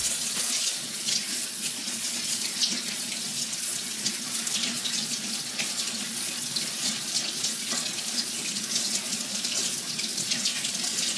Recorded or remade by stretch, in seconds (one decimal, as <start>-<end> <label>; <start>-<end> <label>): 0.0-11.2 remade